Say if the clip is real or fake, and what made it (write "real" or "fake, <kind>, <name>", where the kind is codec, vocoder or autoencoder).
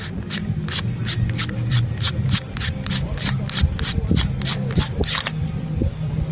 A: real